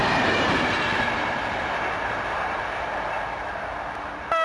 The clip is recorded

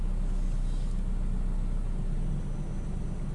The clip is recorded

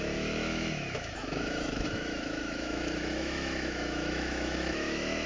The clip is remade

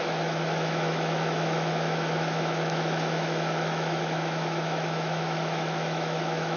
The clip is remade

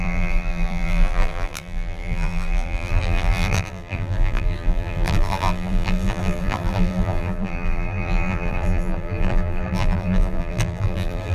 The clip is remade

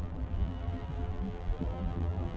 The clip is remade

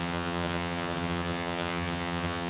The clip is remade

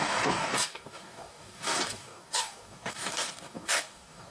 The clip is remade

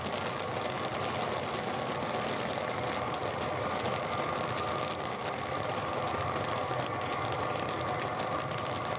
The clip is recorded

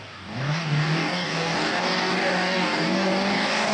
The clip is remade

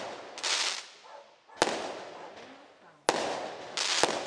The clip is recorded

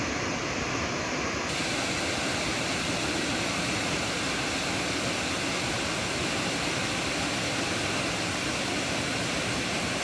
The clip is recorded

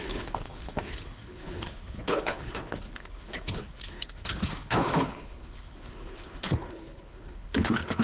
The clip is remade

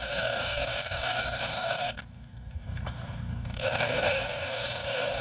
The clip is remade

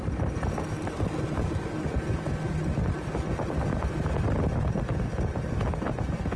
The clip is recorded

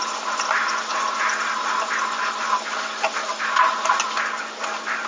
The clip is recorded